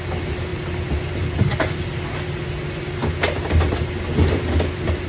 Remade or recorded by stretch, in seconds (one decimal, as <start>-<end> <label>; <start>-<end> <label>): 0.0-5.1 recorded